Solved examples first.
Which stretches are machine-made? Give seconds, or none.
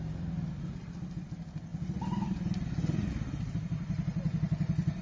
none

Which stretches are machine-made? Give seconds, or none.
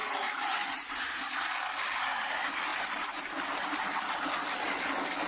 0.0-1.5 (vocoder, BigVGAN v2)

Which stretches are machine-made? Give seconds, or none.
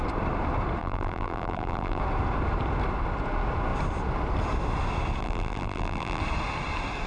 0.8-2.0 (vocoder, BigVGAN v2); 5.2-6.2